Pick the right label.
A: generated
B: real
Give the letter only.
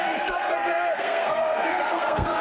A